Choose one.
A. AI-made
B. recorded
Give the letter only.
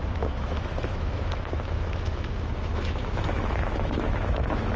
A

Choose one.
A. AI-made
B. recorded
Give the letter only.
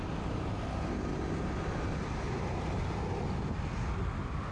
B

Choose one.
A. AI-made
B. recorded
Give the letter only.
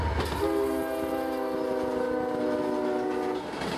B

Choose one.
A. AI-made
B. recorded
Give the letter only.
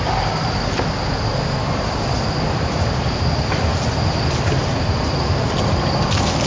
B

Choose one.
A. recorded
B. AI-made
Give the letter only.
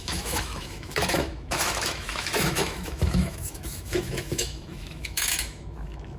B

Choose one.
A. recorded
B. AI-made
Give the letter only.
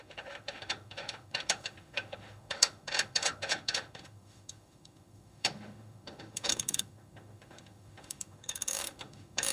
B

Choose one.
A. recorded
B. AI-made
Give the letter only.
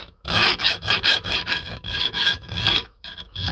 B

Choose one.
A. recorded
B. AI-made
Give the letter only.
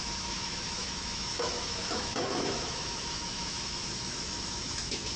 B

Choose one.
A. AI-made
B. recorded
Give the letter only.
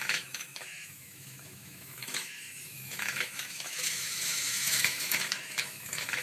A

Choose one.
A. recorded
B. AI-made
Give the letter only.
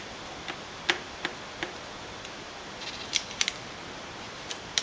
A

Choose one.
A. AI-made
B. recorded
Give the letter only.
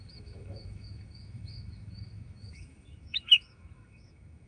A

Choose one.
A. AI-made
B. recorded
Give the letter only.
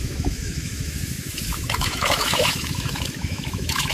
A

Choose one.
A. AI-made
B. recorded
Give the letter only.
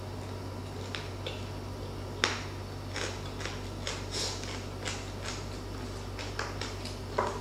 B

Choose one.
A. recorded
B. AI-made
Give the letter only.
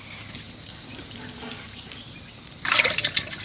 A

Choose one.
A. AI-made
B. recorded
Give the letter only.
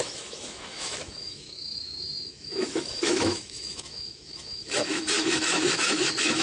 A